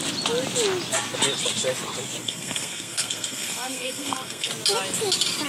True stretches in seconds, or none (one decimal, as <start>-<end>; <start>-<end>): 0.0-2.2; 4.5-5.5